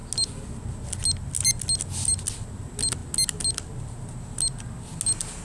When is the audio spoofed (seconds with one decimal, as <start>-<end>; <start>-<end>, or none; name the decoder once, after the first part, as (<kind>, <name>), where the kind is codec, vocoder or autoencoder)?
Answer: none